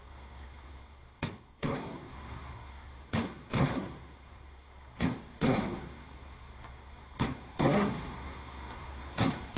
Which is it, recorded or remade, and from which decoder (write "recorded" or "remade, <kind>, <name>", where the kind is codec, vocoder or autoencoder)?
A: remade, codec, SNAC